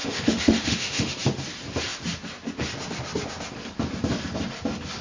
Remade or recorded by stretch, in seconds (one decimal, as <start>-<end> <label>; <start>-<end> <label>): 0.0-1.1 remade; 1.1-5.0 recorded